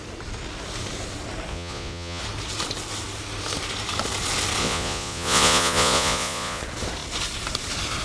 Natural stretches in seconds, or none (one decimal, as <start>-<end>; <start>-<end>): 0.0-1.5; 2.2-4.6; 6.6-8.0